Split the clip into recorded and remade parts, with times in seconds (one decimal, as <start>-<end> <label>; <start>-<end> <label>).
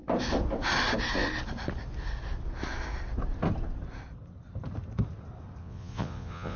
0.0-5.6 recorded; 5.6-6.6 remade